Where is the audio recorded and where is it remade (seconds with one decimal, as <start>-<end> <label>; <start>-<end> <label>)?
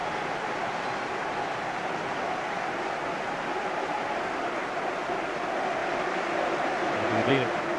0.0-4.7 remade; 4.7-7.8 recorded